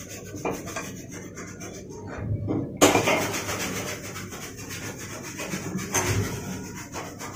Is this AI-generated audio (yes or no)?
no